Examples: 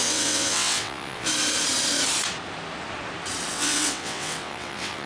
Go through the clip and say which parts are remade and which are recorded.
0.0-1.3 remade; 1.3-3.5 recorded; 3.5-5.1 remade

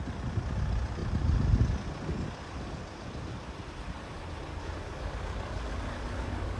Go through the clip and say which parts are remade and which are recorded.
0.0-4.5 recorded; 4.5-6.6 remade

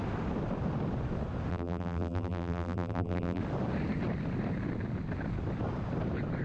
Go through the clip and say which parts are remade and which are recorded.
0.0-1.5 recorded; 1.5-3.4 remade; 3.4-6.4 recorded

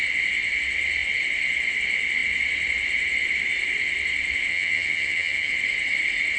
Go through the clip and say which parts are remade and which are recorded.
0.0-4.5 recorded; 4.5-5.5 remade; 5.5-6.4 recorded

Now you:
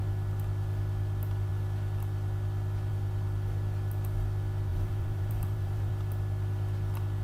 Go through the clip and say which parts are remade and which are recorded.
0.0-4.7 recorded; 4.7-5.9 remade; 5.9-7.2 recorded